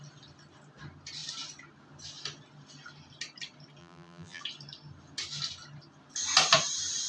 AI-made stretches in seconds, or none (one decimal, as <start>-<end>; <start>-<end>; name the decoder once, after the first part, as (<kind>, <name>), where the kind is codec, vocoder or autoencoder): 3.8-4.4 (vocoder, BigVGAN v2)